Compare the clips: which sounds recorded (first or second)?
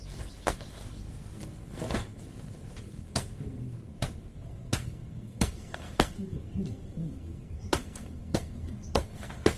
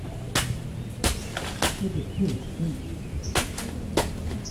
second